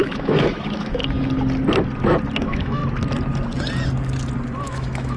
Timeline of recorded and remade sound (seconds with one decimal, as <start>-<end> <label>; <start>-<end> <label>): 0.0-1.0 remade; 1.0-2.4 recorded; 2.4-2.8 remade; 2.8-4.6 recorded; 4.6-5.2 remade